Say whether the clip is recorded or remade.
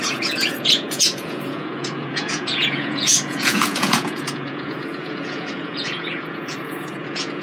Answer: remade